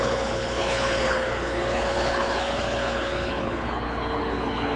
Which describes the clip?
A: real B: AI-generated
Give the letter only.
B